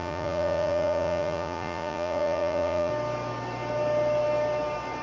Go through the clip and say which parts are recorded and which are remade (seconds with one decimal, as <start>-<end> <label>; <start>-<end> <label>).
0.0-2.9 remade; 2.9-5.0 recorded